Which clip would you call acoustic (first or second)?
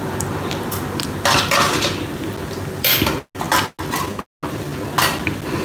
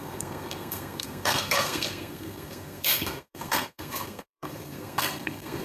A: first